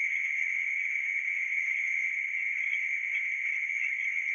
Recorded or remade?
remade